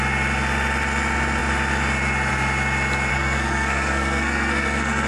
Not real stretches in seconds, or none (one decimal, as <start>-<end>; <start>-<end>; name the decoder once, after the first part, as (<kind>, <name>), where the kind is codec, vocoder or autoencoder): 3.1-5.1 (codec, SNAC)